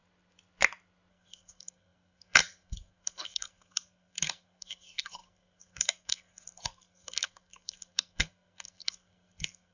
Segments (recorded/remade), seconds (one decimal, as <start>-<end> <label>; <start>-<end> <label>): 0.0-1.1 recorded; 1.1-9.7 remade